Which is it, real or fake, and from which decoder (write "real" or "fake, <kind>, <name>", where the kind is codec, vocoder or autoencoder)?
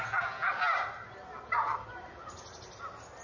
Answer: real